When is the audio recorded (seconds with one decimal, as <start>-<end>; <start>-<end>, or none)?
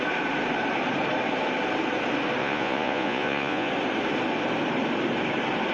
0.0-2.4; 3.7-5.7